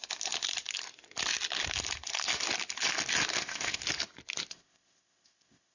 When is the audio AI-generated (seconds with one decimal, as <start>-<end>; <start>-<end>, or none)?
3.4-3.8; 4.5-5.7